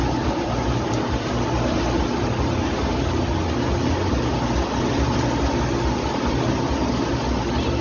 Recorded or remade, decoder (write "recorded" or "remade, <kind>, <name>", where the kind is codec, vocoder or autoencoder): recorded